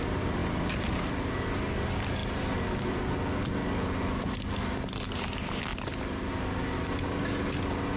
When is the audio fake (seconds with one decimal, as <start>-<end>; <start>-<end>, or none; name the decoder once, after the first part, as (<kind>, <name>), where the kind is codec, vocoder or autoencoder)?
none